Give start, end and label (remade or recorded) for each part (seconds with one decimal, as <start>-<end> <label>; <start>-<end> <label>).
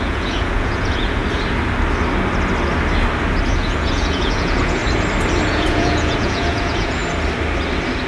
0.0-1.2 remade; 1.2-3.5 recorded; 3.5-4.8 remade; 4.8-5.5 recorded; 5.5-7.0 remade; 7.0-8.1 recorded